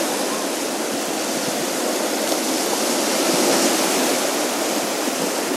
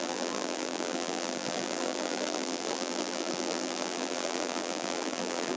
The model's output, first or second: second